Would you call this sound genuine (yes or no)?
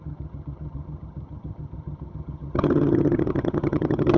no